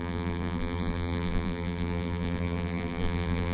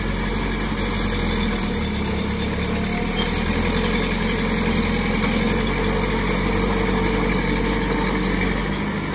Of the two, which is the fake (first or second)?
first